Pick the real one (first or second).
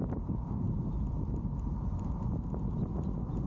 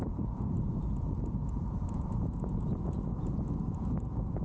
first